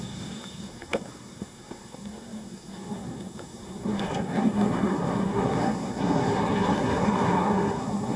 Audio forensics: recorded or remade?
remade